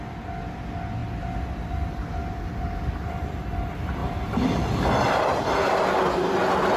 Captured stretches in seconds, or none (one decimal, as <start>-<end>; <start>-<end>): 0.0-6.8